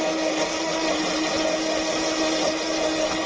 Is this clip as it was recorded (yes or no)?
yes